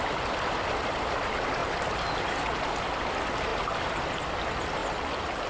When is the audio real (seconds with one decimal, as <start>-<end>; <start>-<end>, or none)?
0.0-5.5